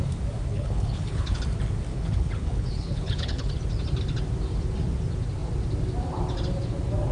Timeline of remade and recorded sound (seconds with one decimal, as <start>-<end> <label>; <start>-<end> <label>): 0.0-0.5 recorded; 0.5-1.4 remade; 1.4-1.9 recorded; 1.9-3.5 remade; 3.5-7.1 recorded